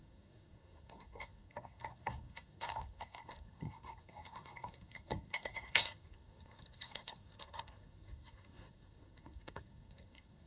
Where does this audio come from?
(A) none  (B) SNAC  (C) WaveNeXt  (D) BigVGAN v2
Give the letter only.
B